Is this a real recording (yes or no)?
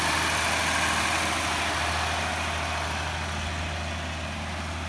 yes